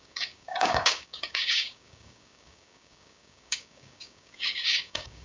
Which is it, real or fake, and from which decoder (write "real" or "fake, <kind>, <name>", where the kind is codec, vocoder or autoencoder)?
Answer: fake, codec, DAC